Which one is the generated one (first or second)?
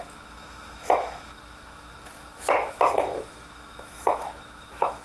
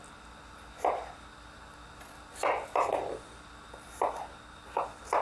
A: first